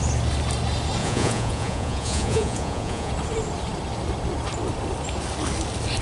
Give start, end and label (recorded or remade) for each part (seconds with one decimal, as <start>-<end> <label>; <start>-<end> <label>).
0.0-1.0 recorded; 1.0-3.1 remade; 3.1-6.0 recorded